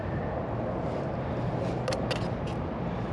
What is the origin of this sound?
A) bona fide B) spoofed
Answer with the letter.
A